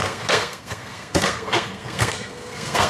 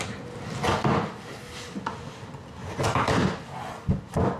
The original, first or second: second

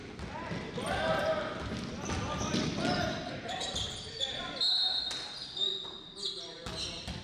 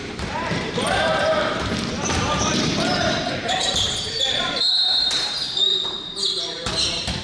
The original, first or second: first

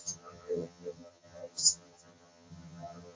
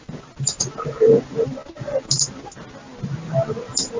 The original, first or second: second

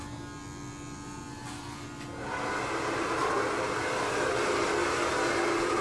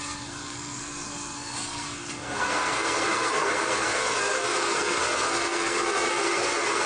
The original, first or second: first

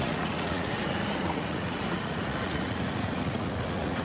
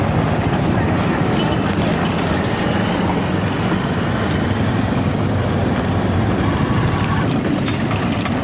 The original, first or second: second